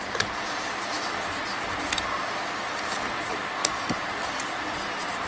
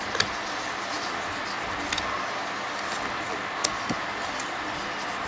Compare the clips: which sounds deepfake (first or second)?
first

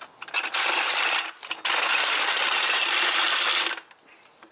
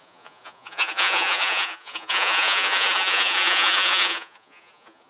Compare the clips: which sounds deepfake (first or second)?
second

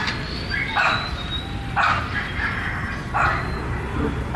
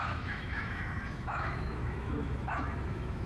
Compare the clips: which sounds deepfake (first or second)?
second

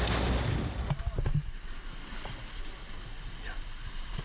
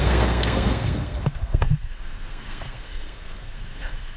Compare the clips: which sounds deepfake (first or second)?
second